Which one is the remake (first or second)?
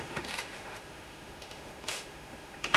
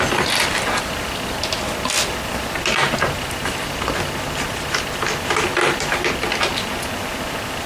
first